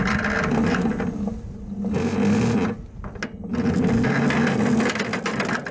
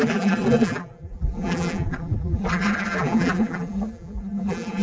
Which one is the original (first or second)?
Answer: first